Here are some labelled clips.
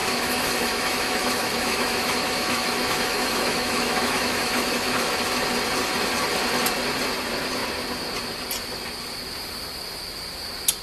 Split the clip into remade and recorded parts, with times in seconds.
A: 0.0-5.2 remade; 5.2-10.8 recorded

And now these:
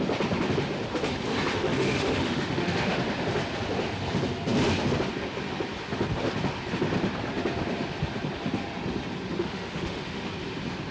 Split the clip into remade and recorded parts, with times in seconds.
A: 0.0-1.5 recorded; 1.5-3.0 remade; 3.0-9.4 recorded; 9.4-10.3 remade; 10.3-10.9 recorded

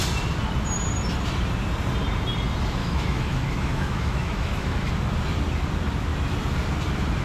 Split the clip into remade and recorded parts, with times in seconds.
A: 0.0-2.8 recorded; 2.8-4.9 remade; 4.9-7.2 recorded

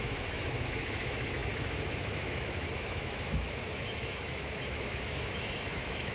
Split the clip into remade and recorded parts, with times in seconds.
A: 0.0-6.1 remade

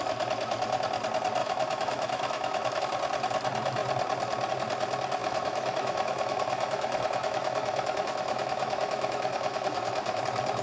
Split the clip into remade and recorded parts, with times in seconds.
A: 0.0-1.4 recorded; 1.4-2.8 remade; 2.8-5.2 recorded; 5.2-10.2 remade; 10.2-10.6 recorded